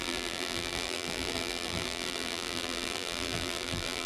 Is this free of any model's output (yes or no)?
no